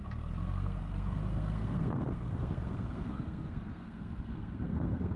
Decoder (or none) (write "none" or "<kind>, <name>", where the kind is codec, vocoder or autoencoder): codec, SNAC